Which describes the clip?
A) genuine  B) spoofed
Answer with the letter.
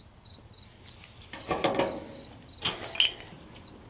A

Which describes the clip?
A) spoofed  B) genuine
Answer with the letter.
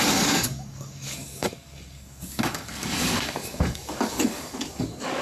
A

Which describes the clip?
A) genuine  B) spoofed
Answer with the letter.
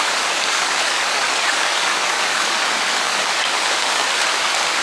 B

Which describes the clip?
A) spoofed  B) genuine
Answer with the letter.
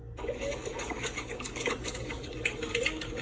A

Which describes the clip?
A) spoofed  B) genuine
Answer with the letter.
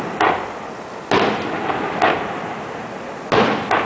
B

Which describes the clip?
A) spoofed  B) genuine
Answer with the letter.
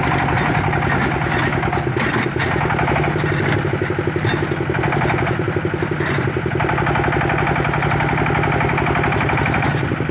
B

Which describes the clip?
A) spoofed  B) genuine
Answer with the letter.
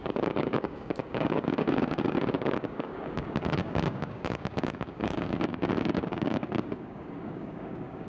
A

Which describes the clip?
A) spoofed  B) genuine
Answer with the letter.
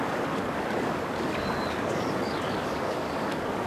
A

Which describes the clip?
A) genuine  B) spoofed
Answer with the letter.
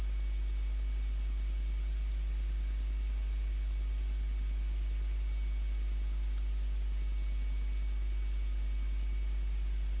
A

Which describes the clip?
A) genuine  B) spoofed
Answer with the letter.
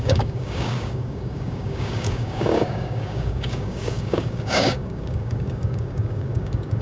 B